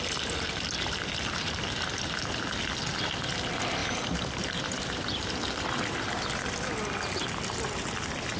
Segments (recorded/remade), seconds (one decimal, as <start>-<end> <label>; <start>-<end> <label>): 0.0-3.8 recorded; 3.8-5.3 remade; 5.3-8.4 recorded